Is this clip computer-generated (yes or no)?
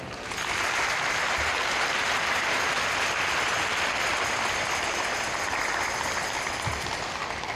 no